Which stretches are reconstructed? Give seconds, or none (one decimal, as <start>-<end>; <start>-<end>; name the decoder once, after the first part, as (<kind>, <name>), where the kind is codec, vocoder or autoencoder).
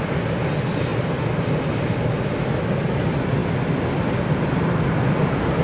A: 0.9-1.5 (vocoder, BigVGAN v2); 3.4-5.6